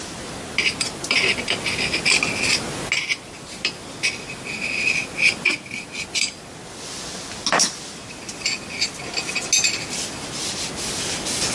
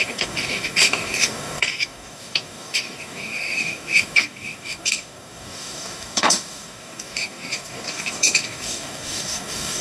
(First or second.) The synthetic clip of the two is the second